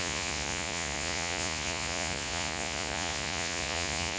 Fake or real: fake